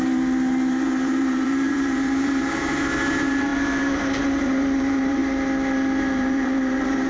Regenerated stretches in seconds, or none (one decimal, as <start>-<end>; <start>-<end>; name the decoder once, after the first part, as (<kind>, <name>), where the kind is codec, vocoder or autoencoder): 0.0-5.2 (vocoder, BigVGAN v2); 6.0-7.1